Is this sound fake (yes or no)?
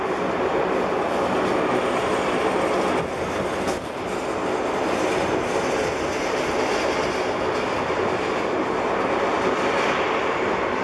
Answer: no